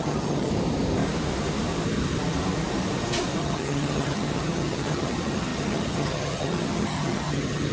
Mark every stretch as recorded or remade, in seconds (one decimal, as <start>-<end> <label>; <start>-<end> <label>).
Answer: 0.0-0.5 remade; 0.5-3.4 recorded; 3.4-7.7 remade